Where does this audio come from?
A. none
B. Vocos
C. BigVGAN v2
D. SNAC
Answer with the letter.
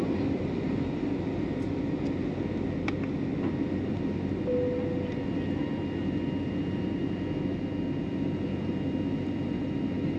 A